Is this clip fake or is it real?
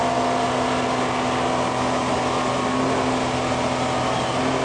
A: real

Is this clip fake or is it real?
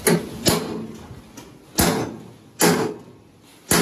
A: real